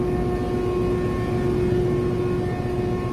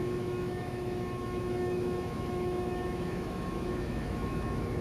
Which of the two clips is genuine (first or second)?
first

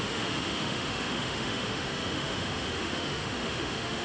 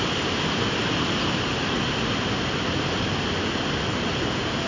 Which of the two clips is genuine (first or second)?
second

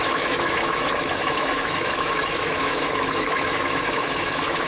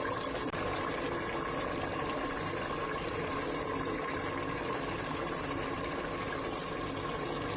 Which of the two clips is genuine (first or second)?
second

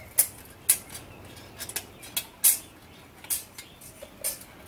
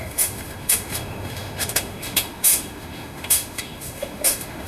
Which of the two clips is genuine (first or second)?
first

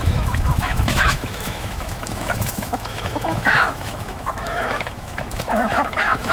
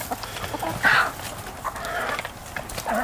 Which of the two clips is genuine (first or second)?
second